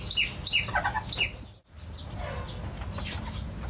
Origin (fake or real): real